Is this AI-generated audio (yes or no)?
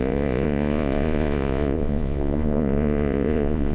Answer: yes